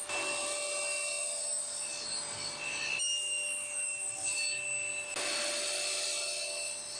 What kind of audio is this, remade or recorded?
recorded